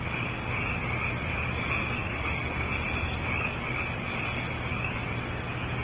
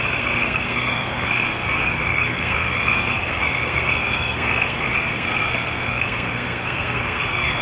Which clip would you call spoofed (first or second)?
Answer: second